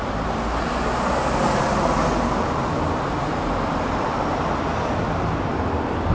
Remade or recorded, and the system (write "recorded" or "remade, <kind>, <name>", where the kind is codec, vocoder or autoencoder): recorded